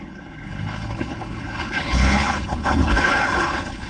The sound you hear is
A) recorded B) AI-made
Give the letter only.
B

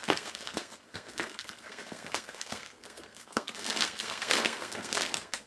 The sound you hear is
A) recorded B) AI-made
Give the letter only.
B